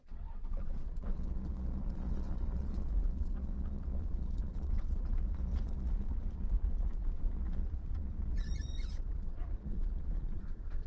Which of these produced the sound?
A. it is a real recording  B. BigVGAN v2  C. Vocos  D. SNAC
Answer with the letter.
C